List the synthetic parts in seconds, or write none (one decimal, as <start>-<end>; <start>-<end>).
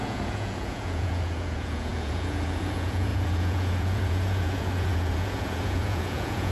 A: 0.0-6.5